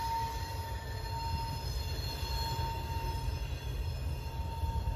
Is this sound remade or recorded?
recorded